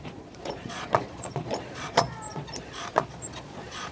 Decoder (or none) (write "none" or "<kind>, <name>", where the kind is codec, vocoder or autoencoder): vocoder, Vocos